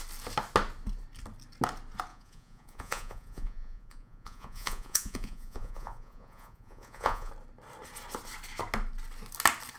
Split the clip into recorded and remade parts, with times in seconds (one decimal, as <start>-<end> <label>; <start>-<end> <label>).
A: 0.0-2.1 recorded; 2.1-7.3 remade; 7.3-9.8 recorded